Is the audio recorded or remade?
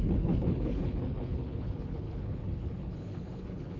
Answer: remade